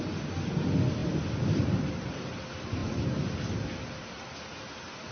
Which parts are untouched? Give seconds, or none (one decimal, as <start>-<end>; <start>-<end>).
0.0-5.1